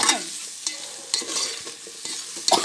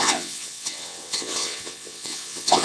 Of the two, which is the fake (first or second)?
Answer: second